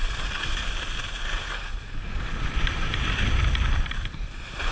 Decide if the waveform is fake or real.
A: real